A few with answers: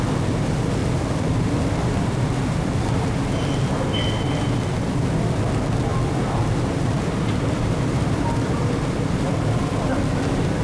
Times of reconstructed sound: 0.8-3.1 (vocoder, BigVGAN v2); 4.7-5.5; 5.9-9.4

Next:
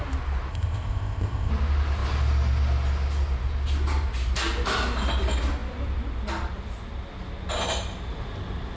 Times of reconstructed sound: 0.5-1.5 (codec, ZipCodec)

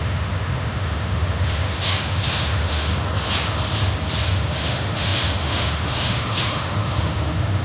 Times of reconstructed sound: 0.0-2.9 (autoencoder, DAC-VAE); 4.2-7.6

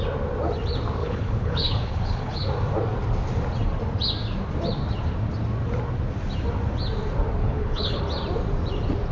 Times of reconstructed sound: 1.0-2.5 (codec, HILCodec); 7.4-8.0

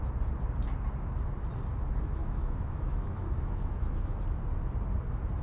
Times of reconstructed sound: 2.2-4.2 (autoencoder, DAC-VAE)

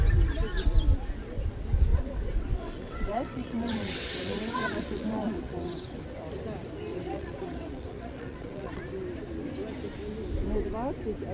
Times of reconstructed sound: 1.9-6.0 (vocoder, WaveNeXt); 6.9-8.8

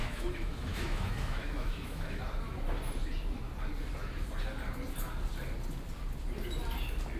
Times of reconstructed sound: 0.0-2.2 (autoencoder, DAC-VAE)

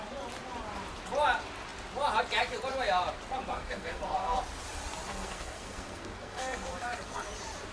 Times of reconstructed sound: 3.5-4.4 (codec, SNAC); 5.1-7.3